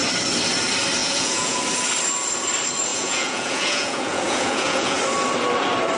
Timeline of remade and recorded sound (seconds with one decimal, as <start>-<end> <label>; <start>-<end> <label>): 0.0-1.0 recorded; 1.0-1.6 remade; 1.6-2.9 recorded; 2.9-5.0 remade; 5.0-6.0 recorded